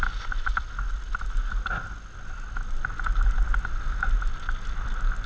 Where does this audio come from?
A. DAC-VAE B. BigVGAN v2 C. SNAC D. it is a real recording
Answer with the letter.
D